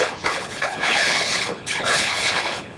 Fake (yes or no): yes